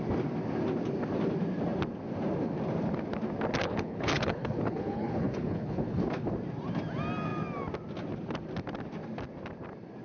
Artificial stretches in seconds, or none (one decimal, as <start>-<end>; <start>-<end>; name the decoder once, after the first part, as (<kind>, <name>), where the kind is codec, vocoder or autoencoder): 3.6-6.3 (codec, HILCodec)